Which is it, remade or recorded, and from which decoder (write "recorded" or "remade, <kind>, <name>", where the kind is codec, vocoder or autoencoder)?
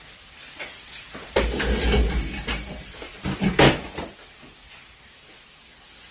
recorded